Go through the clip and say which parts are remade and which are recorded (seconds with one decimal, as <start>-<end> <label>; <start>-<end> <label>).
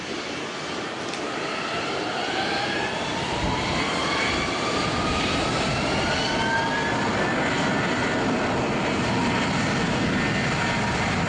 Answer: 0.0-3.1 recorded; 3.1-6.0 remade; 6.0-11.3 recorded